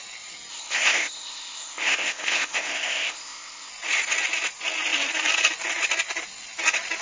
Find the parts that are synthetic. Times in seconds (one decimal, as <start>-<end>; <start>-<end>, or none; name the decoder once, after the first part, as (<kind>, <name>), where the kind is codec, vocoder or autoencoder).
0.5-3.7 (codec, ZipCodec)